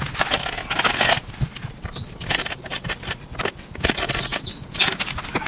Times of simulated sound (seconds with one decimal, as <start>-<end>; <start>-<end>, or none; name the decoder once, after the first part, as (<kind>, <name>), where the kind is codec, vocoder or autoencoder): 4.3-4.9 (vocoder, Vocos)